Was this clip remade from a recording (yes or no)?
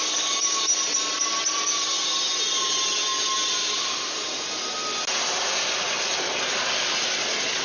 no